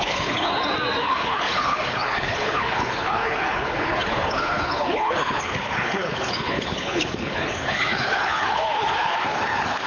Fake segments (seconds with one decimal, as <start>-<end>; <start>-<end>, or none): 0.0-0.5; 1.0-9.9

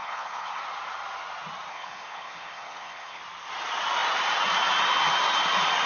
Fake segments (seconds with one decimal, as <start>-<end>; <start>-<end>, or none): 0.0-0.6; 1.7-3.2

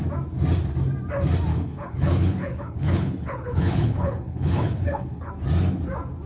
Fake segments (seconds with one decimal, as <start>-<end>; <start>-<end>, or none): 1.5-5.3

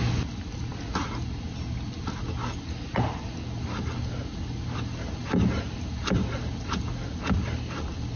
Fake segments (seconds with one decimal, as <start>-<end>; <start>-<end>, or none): none

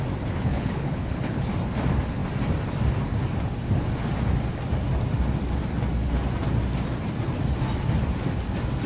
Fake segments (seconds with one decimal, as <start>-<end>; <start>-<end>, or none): 0.5-1.5

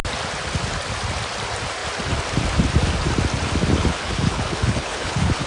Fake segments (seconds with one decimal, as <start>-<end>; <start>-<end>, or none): 3.8-5.5

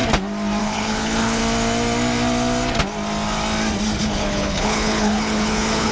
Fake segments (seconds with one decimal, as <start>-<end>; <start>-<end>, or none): 0.6-1.4; 4.0-5.9